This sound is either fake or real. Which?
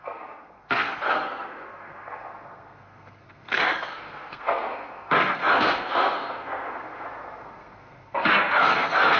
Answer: fake